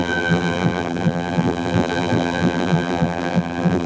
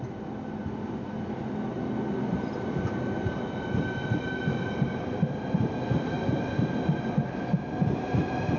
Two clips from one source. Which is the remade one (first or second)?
first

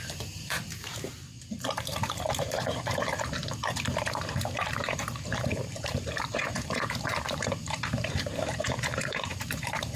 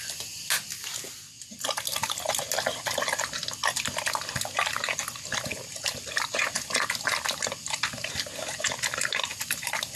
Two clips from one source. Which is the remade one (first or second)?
first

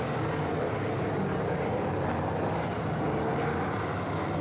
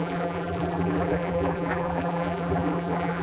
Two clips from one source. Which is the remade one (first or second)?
second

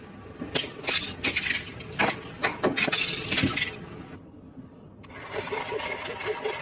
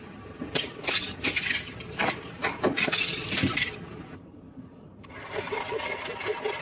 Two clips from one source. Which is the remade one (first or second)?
second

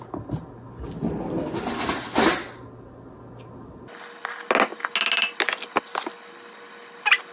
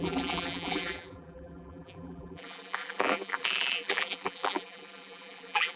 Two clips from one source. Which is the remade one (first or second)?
second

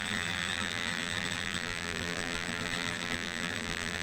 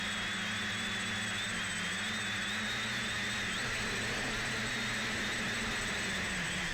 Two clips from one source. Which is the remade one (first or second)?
first